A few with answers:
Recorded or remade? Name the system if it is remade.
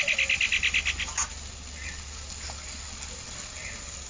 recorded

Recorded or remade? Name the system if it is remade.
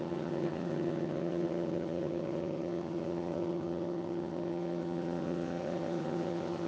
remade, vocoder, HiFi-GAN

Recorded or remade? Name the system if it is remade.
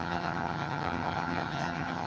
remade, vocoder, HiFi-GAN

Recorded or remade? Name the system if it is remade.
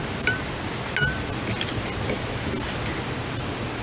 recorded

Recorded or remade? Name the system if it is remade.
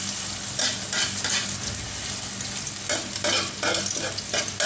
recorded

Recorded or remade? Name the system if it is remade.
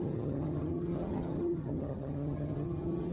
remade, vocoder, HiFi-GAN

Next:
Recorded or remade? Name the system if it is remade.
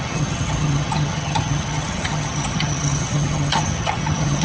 remade, vocoder, HiFi-GAN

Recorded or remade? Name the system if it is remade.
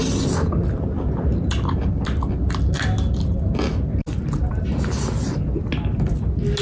recorded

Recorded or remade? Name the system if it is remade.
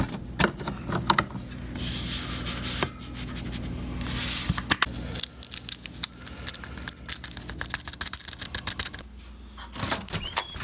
recorded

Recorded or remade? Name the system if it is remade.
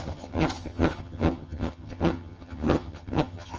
remade, vocoder, HiFi-GAN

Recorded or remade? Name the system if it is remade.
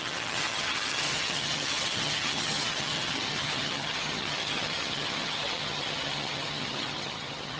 remade, vocoder, HiFi-GAN